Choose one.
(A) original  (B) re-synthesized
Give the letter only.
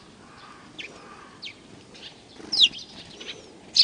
A